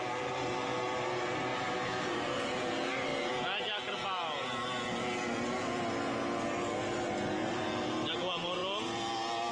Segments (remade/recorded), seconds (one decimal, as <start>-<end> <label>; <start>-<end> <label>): 0.0-9.5 recorded